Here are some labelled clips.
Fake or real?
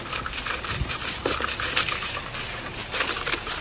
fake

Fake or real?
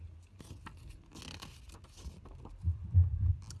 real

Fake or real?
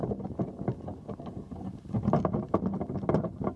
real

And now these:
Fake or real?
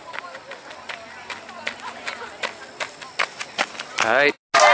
real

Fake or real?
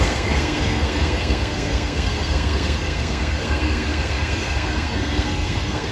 fake